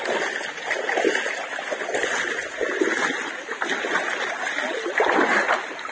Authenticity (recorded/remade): recorded